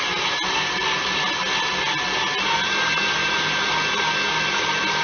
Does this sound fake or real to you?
real